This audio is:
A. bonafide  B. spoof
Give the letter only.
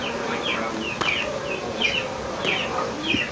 A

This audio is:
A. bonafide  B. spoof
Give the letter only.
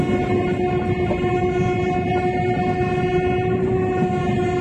A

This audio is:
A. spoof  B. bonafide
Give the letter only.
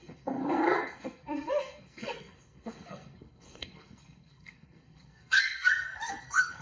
A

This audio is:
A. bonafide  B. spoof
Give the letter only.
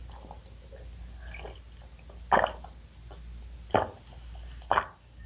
A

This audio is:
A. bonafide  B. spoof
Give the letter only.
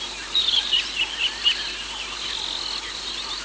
A